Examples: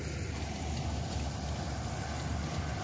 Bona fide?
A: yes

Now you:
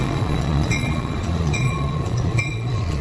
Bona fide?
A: no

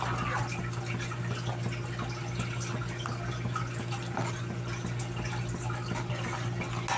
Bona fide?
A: yes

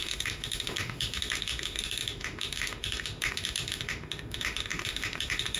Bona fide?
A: no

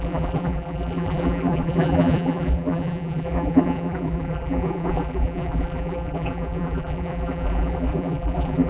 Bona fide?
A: no